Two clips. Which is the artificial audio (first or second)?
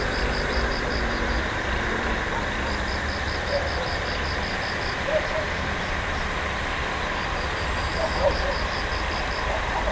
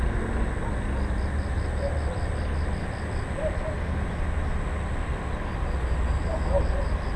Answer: first